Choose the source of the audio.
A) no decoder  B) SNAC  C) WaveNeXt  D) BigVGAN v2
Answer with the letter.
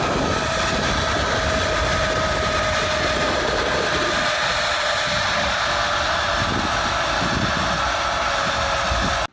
A